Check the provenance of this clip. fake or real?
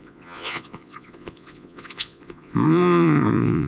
fake